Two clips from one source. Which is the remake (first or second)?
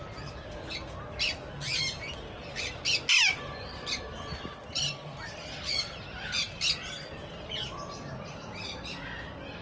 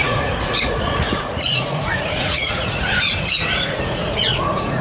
second